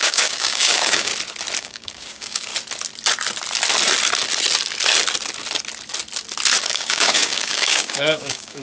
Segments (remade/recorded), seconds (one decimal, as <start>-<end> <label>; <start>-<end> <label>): 0.0-1.1 remade; 1.1-1.6 recorded; 1.6-2.5 remade; 2.5-6.6 recorded; 6.6-8.6 remade